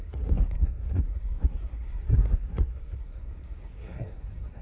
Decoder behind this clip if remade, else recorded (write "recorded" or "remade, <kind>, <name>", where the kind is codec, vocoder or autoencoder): remade, codec, SNAC